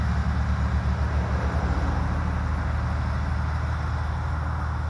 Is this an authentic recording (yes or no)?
yes